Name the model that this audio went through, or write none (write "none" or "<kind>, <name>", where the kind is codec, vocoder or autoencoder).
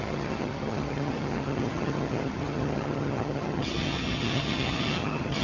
vocoder, HiFi-GAN